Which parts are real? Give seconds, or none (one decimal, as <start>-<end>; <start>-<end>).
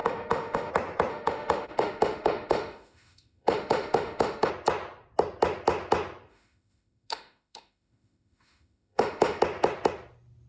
0.7-1.1; 4.5-6.3; 9.4-10.5